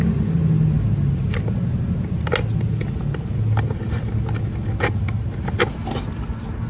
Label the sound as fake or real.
real